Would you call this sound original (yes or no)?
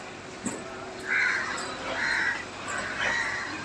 yes